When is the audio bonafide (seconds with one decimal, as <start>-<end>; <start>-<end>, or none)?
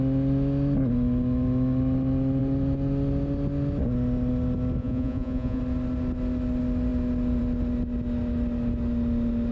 0.0-4.8; 5.6-9.5